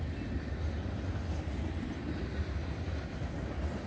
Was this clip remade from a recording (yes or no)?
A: no